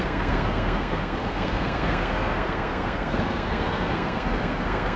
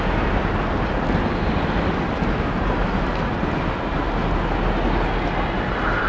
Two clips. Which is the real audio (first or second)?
second